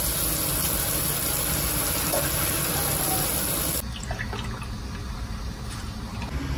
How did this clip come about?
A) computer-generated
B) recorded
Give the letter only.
B